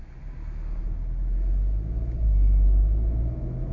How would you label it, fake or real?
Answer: real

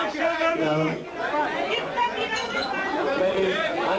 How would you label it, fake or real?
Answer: fake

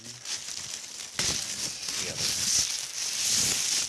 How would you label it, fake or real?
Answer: real